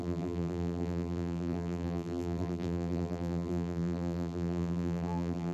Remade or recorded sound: remade